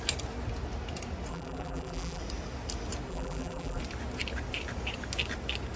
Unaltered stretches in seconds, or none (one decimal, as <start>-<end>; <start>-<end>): 0.0-1.3; 2.2-3.1; 3.8-5.8